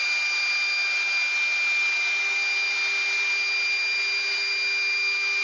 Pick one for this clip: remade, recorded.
recorded